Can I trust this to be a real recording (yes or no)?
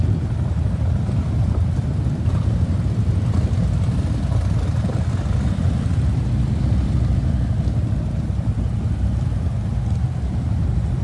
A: no